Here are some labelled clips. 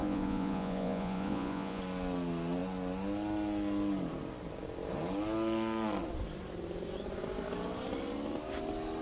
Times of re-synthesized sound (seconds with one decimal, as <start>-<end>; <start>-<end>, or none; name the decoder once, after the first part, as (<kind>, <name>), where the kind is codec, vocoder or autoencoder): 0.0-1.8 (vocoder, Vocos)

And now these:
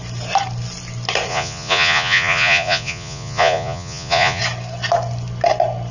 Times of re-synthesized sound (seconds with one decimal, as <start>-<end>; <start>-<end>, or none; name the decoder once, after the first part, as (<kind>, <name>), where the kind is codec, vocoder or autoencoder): 1.3-4.4 (vocoder, Vocos)

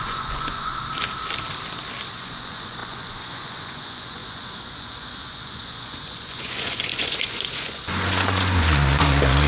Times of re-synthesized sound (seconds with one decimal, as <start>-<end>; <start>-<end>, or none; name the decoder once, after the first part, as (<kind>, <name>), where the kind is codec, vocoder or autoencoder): 0.0-0.7 (vocoder, Vocos); 2.1-9.5